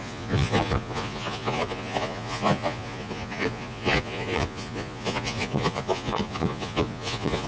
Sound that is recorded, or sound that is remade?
remade